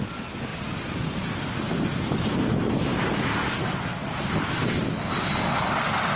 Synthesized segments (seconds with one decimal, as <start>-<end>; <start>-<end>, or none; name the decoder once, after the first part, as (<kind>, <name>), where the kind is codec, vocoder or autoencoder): none